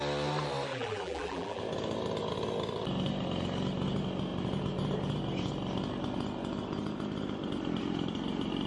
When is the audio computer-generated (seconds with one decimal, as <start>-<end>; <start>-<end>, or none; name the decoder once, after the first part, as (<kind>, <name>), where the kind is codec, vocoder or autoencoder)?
0.7-1.6 (vocoder, BigVGAN v2)